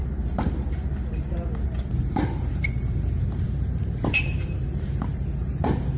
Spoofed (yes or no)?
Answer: yes